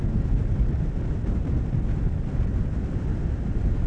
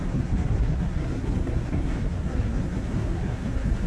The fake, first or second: second